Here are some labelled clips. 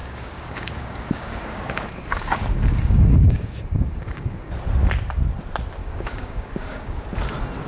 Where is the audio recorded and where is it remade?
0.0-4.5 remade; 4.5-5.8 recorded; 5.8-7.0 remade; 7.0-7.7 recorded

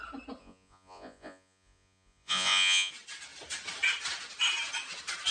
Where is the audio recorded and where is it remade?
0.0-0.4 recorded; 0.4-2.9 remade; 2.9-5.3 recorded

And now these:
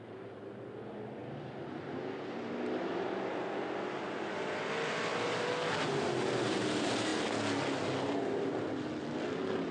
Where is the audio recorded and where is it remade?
0.0-9.7 recorded

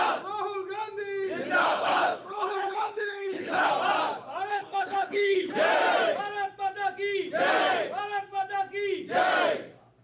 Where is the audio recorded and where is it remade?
0.0-1.6 recorded; 1.6-3.7 remade; 3.7-4.5 recorded; 4.5-5.5 remade; 5.5-10.0 recorded

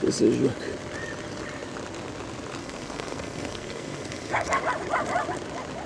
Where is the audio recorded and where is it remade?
0.0-2.6 recorded; 2.6-4.6 remade; 4.6-5.9 recorded